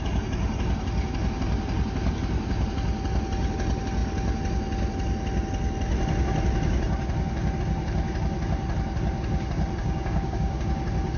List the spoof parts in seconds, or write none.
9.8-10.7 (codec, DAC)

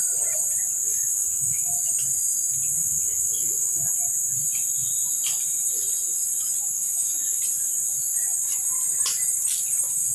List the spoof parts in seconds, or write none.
0.9-1.7 (autoencoder, DAC-VAE); 2.8-3.9; 6.7-7.4

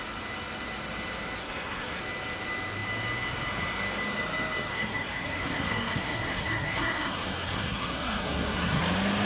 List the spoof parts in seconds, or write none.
1.4-2.0 (codec, SNAC); 4.7-8.8